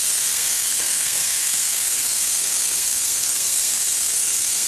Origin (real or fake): fake